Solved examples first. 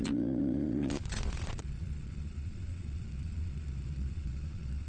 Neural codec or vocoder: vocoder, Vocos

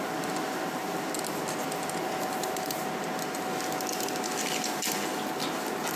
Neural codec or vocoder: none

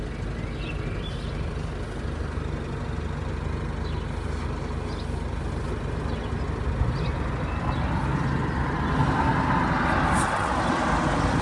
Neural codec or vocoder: none